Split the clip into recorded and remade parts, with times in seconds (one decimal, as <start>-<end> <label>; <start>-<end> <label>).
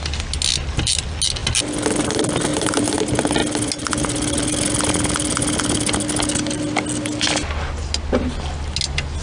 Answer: 0.0-2.5 recorded; 2.5-3.0 remade; 3.0-9.2 recorded